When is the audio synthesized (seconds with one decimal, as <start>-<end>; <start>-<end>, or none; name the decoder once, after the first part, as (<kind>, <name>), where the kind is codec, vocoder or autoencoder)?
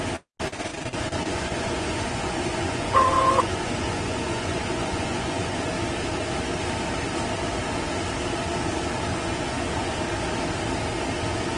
0.7-5.7 (vocoder, Vocos); 9.1-9.9